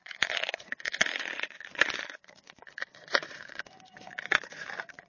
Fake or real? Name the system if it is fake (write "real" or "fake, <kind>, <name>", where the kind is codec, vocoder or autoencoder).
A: fake, vocoder, Vocos